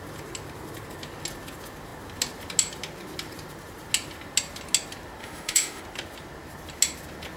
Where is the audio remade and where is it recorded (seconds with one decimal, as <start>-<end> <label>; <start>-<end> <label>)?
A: 0.0-5.2 recorded; 5.2-5.8 remade; 5.8-7.4 recorded